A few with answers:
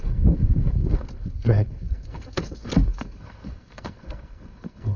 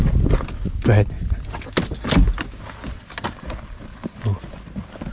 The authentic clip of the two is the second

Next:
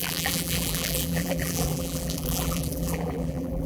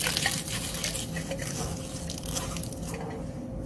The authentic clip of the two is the second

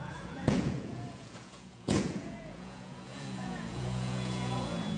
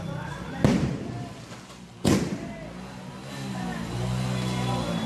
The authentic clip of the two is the second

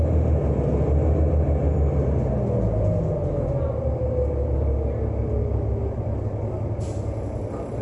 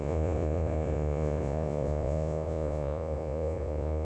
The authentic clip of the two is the first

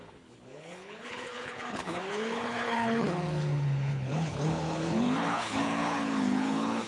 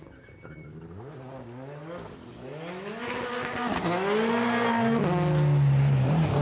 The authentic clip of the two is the second